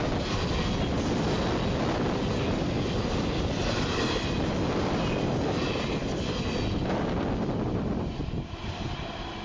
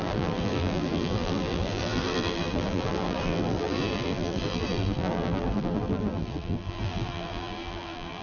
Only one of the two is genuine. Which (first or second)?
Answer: first